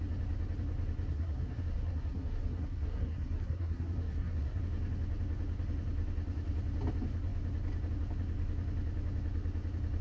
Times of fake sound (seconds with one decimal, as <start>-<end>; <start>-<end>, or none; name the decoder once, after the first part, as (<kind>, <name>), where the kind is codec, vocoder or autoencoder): 1.1-4.6 (codec, SNAC)